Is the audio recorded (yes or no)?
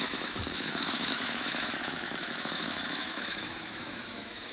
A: no